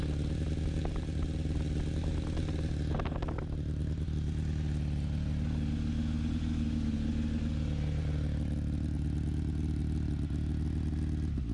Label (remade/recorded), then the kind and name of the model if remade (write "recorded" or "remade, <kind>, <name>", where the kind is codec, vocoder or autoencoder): recorded